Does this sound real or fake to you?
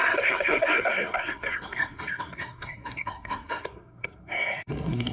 fake